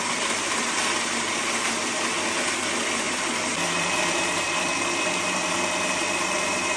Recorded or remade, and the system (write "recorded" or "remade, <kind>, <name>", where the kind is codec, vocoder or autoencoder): recorded